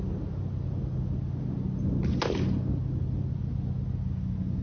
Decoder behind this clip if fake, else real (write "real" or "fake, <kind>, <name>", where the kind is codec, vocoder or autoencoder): real